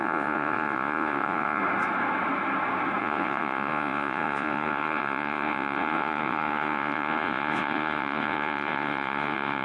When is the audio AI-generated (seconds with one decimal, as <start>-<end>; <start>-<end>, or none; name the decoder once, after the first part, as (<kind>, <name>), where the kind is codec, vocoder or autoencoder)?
0.0-1.6 (vocoder, Vocos); 3.0-9.6